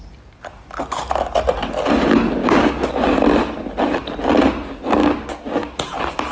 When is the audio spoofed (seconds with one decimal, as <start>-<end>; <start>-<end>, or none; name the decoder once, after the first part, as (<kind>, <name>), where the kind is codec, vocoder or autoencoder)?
2.4-2.9 (codec, DAC); 5.0-5.8